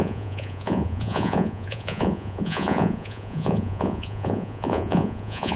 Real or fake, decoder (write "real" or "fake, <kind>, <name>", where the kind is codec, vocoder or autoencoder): fake, vocoder, Vocos